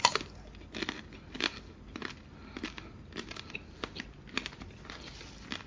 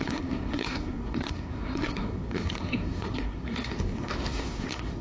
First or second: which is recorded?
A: first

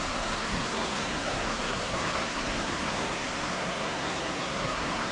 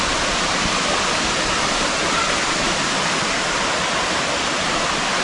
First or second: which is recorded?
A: second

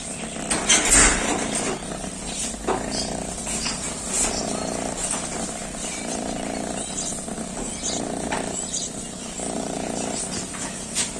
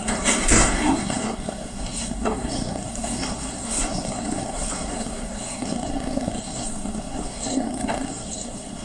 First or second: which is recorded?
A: first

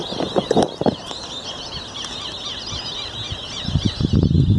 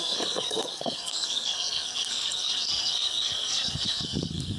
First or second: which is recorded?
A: first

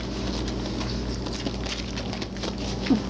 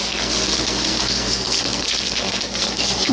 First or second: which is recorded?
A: first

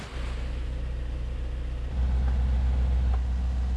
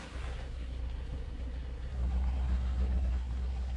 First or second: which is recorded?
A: first